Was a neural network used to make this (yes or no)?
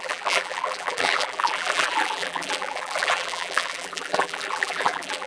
yes